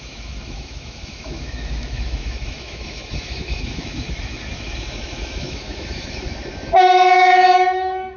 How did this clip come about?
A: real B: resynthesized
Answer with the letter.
B